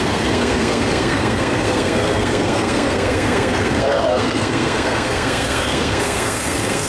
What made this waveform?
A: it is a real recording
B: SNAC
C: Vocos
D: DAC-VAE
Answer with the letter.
B